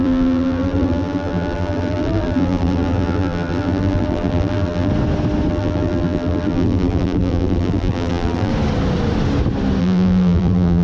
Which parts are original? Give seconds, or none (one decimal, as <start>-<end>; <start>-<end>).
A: 4.9-5.5; 8.5-9.8